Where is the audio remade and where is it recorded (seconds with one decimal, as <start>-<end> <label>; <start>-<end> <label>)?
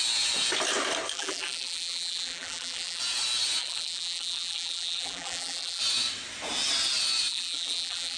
0.0-1.1 recorded; 1.1-3.0 remade; 3.0-3.6 recorded; 3.6-5.8 remade; 5.8-7.3 recorded; 7.3-8.2 remade